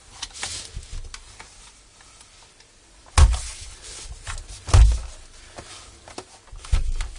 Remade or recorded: recorded